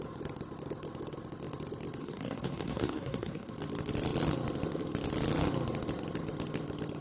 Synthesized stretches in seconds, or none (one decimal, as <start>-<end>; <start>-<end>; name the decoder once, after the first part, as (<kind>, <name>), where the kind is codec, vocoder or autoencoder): 2.0-3.5 (codec, SNAC)